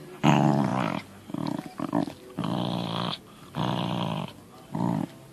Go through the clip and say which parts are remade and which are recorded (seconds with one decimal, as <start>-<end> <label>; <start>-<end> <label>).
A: 0.0-5.3 recorded